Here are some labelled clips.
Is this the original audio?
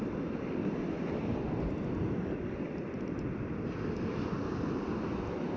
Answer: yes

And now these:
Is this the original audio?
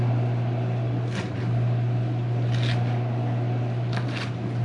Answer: yes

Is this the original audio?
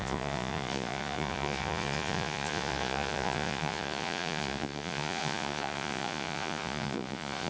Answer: no